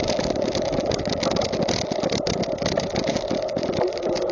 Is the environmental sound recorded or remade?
recorded